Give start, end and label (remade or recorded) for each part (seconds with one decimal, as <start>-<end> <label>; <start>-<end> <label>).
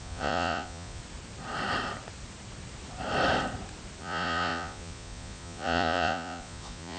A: 0.0-1.0 remade; 1.0-4.0 recorded; 4.0-7.0 remade